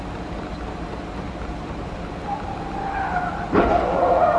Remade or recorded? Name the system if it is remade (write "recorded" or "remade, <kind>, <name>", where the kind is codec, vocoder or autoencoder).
recorded